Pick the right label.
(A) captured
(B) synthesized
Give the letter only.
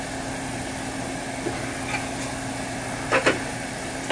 A